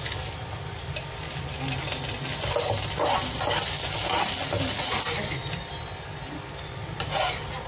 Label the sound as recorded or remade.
recorded